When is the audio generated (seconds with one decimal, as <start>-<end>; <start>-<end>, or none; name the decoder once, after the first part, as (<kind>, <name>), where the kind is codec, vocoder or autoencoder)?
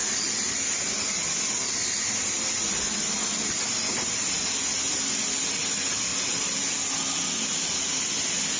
none